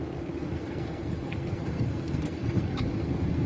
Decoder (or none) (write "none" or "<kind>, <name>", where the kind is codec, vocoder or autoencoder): codec, SNAC